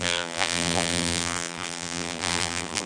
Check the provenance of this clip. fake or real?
fake